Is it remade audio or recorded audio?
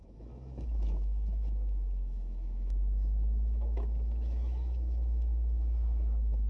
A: remade